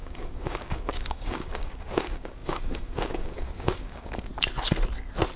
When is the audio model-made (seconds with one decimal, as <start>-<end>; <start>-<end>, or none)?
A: 0.0-4.3